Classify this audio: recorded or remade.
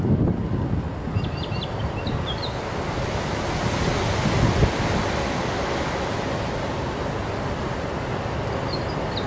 recorded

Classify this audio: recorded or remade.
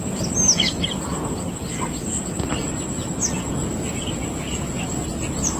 recorded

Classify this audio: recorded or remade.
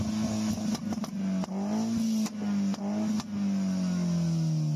recorded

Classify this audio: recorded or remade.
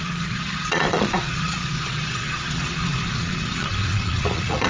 remade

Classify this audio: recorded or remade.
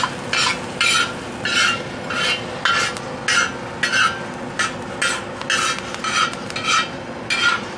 recorded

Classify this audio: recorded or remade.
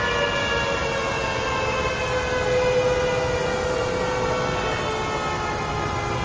recorded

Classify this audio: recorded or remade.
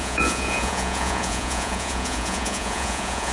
remade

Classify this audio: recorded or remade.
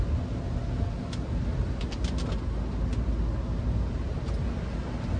recorded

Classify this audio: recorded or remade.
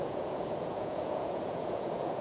remade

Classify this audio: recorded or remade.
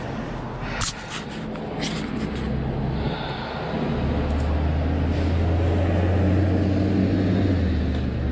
recorded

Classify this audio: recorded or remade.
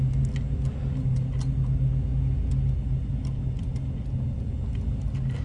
recorded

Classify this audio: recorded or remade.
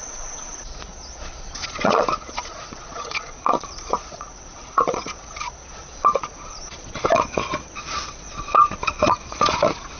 remade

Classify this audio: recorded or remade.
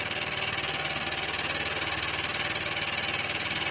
recorded